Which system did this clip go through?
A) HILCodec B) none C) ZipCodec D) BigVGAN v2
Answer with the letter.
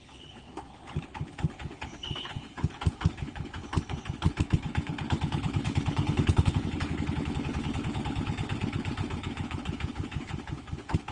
A